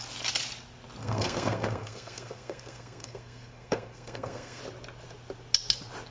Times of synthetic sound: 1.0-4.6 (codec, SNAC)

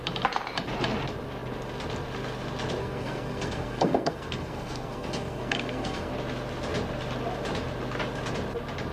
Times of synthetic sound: 2.8-6.1 (codec, SNAC)